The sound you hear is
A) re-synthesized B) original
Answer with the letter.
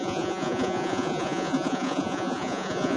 A